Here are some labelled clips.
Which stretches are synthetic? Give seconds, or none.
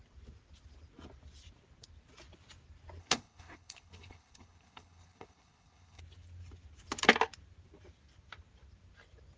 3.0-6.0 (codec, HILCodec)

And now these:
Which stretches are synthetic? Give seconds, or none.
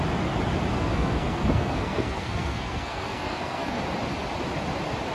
0.7-3.8 (codec, SNAC)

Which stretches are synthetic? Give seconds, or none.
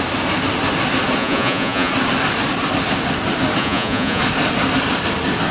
1.2-1.9 (vocoder, Vocos); 3.6-4.2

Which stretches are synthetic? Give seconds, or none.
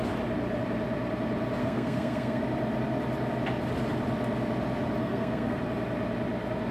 1.6-2.4 (codec, SNAC); 5.0-5.6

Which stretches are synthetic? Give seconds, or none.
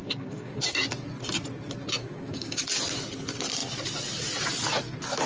0.0-0.6 (codec, DAC); 2.0-2.6